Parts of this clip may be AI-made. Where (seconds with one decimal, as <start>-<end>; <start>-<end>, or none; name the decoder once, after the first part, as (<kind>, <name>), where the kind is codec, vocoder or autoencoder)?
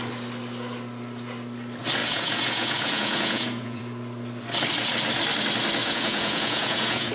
2.0-3.8 (vocoder, Vocos); 5.8-7.1